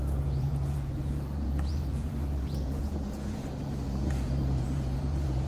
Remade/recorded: remade